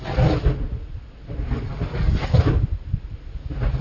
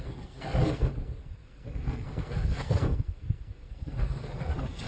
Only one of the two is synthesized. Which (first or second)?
second